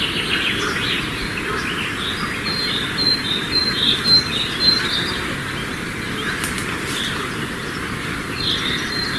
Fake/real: real